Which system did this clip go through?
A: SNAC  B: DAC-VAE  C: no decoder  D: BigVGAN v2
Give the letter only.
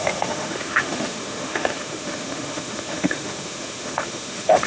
B